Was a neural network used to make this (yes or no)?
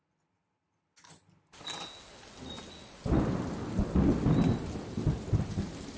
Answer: no